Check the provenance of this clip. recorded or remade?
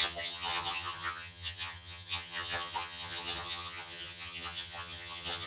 remade